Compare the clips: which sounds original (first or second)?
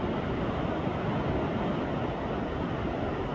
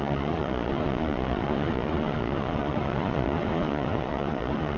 first